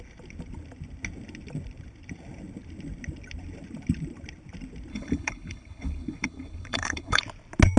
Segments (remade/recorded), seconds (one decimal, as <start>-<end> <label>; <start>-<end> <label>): 0.0-4.9 recorded; 4.9-7.2 remade; 7.2-7.8 recorded